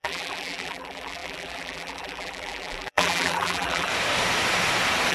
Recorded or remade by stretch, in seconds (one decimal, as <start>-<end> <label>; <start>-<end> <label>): 0.0-3.9 remade; 3.9-5.1 recorded

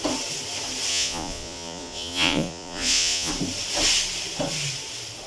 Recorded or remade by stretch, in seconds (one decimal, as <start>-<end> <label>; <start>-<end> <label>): 0.0-0.9 recorded; 0.9-3.3 remade; 3.3-5.3 recorded

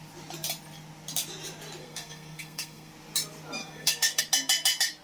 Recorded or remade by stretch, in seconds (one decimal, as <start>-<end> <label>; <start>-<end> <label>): 0.0-1.8 recorded; 1.8-2.9 remade; 2.9-3.6 recorded; 3.6-4.2 remade; 4.2-5.0 recorded

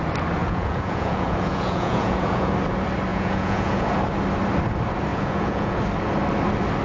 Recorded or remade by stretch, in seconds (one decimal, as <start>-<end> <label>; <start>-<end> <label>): 0.0-0.4 recorded; 0.4-2.5 remade; 2.5-3.1 recorded; 3.1-4.0 remade; 4.0-5.1 recorded; 5.1-5.8 remade; 5.8-6.8 recorded

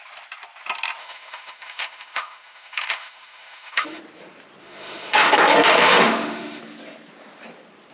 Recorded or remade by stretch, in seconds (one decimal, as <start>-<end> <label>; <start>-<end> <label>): 0.0-1.0 recorded; 1.0-4.0 remade; 4.0-4.6 recorded; 4.6-6.6 remade; 6.6-7.9 recorded

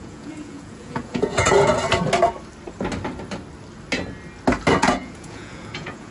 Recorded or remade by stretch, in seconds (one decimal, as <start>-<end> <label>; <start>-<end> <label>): 0.0-1.7 remade; 1.7-4.8 recorded; 4.8-6.1 remade